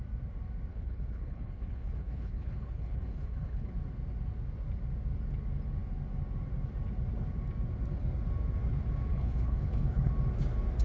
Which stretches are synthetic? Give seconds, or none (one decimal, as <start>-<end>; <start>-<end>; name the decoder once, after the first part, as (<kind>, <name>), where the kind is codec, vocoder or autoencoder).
0.7-3.7 (codec, HILCodec); 9.1-10.1